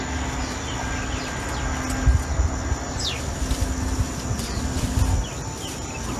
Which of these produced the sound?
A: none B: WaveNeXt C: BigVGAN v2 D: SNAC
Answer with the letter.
A